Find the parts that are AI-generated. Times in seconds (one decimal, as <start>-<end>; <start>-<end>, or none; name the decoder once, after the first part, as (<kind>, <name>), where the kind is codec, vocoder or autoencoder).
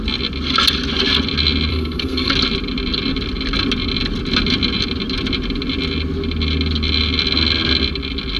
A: 1.7-2.3 (codec, SNAC)